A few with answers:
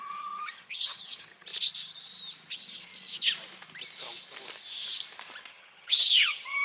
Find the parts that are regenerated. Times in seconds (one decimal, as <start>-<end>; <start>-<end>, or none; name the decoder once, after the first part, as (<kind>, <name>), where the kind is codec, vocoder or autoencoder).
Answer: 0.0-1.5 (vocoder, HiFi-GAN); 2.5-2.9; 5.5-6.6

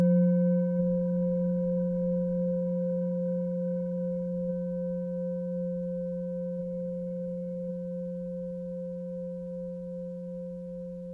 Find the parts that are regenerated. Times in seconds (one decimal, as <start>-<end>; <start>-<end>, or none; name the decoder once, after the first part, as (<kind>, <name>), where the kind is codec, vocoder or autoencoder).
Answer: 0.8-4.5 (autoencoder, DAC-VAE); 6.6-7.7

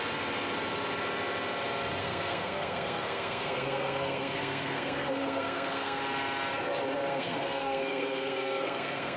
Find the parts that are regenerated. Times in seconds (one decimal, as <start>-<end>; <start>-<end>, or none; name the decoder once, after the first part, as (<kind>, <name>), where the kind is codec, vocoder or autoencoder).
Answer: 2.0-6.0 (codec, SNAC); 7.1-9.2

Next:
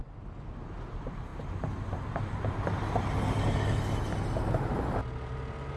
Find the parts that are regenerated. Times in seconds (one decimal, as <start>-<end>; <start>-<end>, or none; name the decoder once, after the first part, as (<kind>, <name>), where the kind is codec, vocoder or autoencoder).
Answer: none